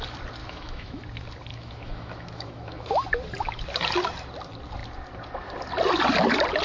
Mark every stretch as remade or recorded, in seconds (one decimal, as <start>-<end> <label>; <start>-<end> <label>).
0.0-0.4 recorded; 0.4-1.0 remade; 1.0-1.5 recorded; 1.5-2.9 remade; 2.9-6.6 recorded